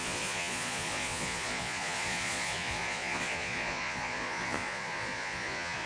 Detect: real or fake fake